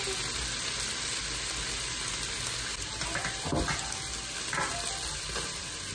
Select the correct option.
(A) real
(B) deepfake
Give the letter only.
A